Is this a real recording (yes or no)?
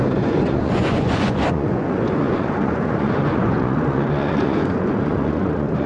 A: no